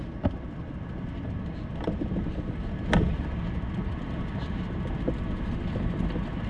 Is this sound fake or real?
real